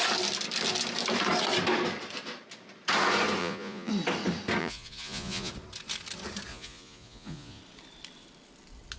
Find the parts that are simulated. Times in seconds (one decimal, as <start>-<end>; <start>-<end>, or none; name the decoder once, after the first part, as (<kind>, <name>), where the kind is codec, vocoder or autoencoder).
3.4-3.9 (vocoder, Vocos); 4.6-5.5; 6.5-7.6